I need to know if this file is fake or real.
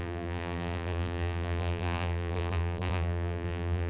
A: fake